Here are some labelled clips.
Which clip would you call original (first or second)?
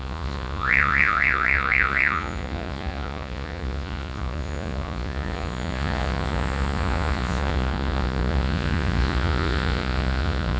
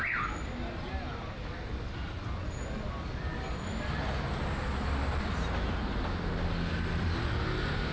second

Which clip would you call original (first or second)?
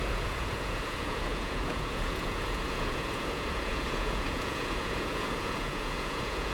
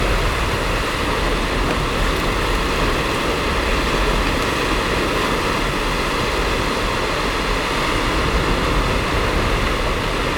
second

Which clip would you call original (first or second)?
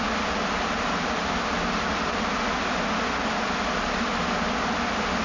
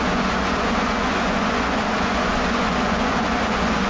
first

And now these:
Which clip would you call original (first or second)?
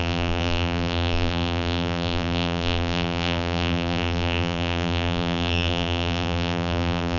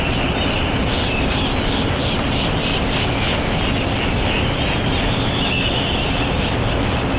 second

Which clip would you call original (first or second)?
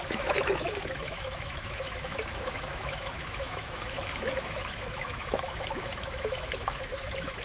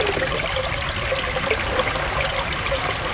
second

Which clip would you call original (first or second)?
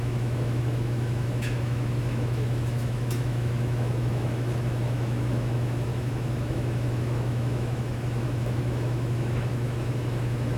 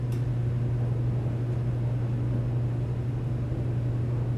second